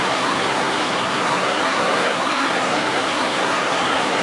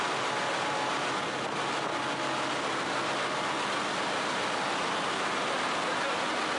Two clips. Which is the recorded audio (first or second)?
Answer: second